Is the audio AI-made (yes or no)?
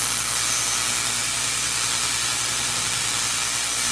no